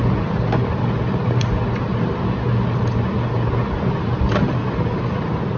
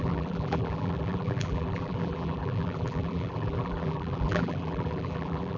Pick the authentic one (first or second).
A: first